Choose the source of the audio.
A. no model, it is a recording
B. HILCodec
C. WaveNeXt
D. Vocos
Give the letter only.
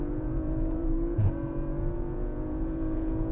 D